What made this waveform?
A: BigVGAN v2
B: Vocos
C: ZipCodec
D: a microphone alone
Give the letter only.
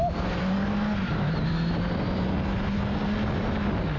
D